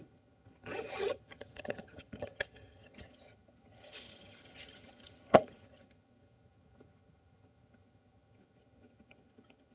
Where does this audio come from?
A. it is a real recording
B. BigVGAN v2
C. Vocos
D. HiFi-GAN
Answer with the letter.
D